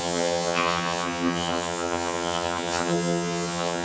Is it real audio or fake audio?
fake